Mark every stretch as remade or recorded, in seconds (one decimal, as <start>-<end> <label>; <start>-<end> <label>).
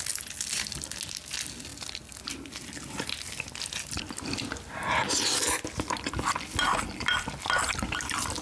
0.0-8.4 recorded